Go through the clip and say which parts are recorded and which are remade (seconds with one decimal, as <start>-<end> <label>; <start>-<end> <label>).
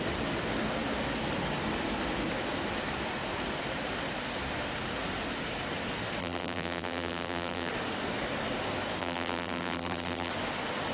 0.0-6.2 recorded; 6.2-7.7 remade; 7.7-9.0 recorded; 9.0-10.3 remade; 10.3-10.9 recorded